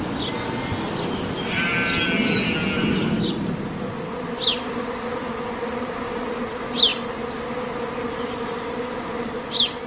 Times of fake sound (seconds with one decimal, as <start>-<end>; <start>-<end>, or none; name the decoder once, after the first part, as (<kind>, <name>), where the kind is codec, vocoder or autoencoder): none